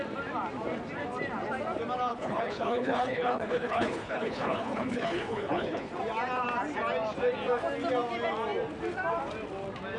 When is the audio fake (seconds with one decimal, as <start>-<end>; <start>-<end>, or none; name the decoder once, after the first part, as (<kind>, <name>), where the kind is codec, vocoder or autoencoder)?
2.1-5.9 (codec, HILCodec)